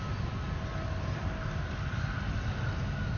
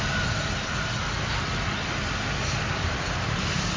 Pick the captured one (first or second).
first